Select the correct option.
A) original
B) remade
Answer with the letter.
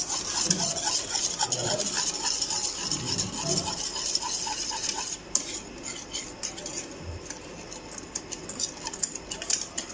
A